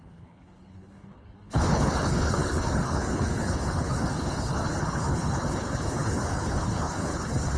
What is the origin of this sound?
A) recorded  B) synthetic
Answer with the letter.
B